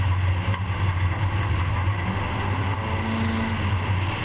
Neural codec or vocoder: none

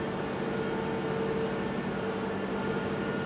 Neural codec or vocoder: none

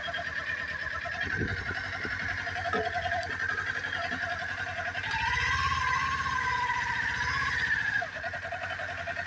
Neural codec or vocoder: none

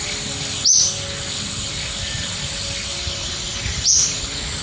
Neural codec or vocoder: none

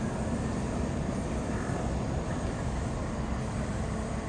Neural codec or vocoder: none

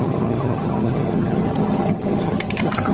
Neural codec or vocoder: vocoder, HiFi-GAN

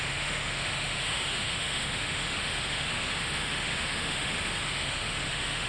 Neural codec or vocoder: autoencoder, DAC-VAE